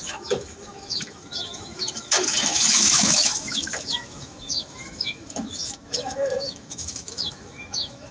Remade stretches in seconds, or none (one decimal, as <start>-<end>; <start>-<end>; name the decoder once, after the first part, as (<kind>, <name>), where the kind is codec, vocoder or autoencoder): 0.0-8.1 (autoencoder, DAC-VAE)